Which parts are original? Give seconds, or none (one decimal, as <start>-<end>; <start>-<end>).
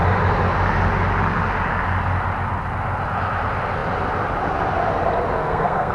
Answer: 0.0-5.4